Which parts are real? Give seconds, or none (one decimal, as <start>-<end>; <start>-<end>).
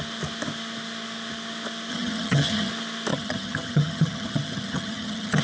0.0-1.9; 2.7-3.1